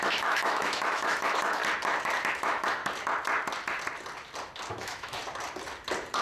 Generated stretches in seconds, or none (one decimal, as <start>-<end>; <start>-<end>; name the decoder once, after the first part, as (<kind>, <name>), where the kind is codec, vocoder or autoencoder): 0.0-1.6 (autoencoder, DAC-VAE); 2.3-2.8; 4.7-5.2